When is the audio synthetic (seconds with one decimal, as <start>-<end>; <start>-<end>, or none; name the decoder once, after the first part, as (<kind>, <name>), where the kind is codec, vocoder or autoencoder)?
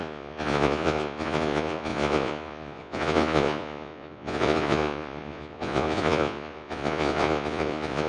0.0-8.1 (vocoder, Vocos)